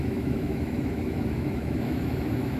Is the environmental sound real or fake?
fake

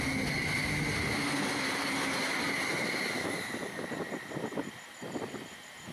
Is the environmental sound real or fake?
real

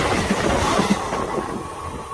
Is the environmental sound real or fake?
real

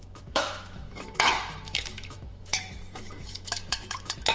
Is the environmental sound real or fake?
fake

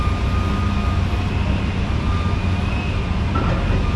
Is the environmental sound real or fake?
real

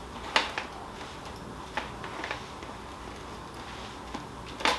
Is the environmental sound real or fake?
real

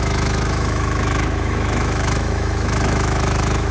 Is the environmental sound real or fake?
fake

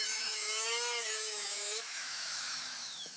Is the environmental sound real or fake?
fake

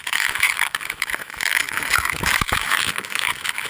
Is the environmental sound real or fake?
fake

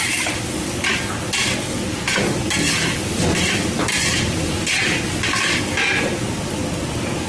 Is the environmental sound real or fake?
real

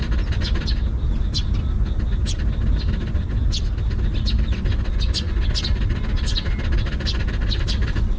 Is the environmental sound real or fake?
real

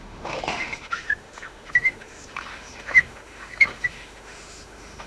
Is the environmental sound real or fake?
fake